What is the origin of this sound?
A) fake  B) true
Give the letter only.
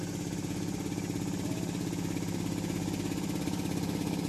B